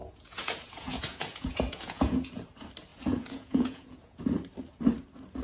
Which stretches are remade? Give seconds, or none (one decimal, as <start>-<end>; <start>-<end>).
0.0-2.3; 2.9-4.2